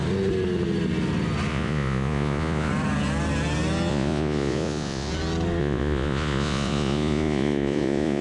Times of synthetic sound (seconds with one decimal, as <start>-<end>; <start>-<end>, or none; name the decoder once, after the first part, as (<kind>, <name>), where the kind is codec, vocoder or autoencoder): 1.5-2.7 (vocoder, Vocos); 3.9-5.1; 5.6-8.2